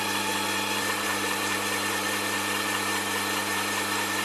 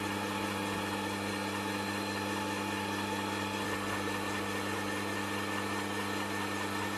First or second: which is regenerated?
first